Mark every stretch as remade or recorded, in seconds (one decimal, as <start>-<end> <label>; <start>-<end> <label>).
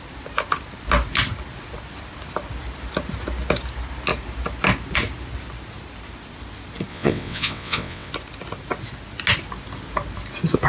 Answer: 0.0-6.9 recorded; 6.9-8.1 remade; 8.1-10.7 recorded